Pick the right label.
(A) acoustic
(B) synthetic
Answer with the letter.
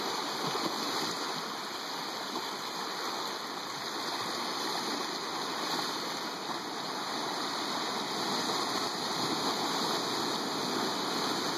A